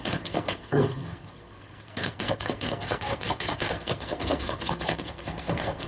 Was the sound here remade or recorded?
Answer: remade